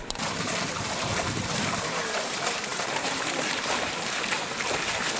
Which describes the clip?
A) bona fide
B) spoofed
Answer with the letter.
B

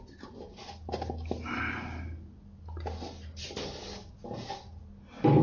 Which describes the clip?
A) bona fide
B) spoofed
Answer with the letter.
A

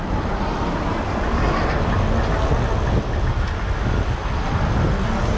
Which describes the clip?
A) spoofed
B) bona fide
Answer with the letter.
B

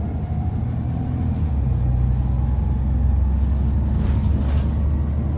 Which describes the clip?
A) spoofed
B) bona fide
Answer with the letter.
B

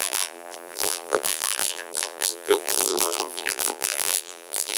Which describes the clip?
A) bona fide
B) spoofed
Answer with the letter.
B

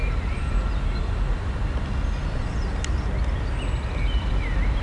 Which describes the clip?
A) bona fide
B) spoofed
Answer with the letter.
A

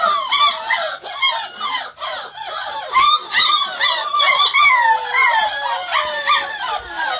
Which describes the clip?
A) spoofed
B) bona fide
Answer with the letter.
B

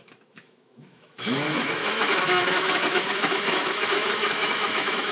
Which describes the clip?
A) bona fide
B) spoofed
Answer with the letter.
B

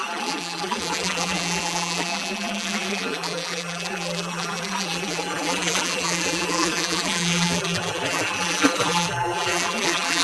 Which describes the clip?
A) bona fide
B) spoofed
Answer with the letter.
B